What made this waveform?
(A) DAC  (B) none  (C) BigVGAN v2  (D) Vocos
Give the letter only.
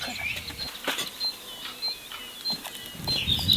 B